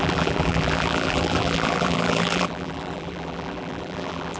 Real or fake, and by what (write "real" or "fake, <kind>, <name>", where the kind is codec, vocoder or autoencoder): fake, vocoder, BigVGAN v2